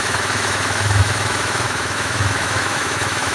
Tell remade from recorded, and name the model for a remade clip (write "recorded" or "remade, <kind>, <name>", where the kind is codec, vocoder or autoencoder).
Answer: remade, autoencoder, DAC-VAE